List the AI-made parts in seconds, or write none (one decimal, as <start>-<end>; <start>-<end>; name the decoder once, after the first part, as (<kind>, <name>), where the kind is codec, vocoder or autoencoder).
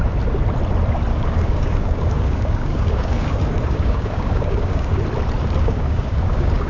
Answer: 1.1-5.0 (codec, DAC); 5.4-6.7